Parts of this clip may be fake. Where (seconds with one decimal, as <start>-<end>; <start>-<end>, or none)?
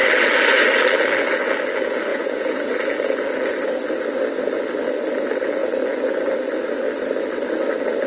2.1-2.7